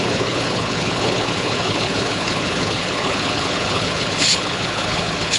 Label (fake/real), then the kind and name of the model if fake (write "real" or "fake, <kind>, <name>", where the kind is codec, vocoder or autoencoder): fake, codec, HILCodec